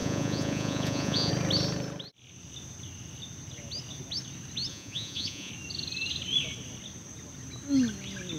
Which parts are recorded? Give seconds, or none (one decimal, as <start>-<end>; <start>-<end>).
1.3-4.7; 5.5-8.4